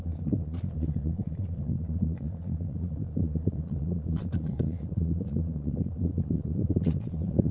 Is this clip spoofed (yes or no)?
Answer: yes